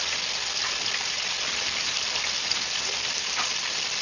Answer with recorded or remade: remade